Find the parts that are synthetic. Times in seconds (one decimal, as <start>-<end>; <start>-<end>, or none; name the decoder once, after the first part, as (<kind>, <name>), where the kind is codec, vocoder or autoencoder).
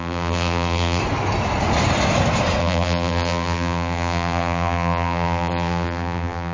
0.0-1.0 (vocoder, BigVGAN v2); 2.6-6.5